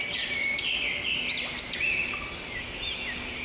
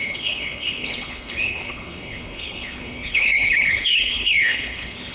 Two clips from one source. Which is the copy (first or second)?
second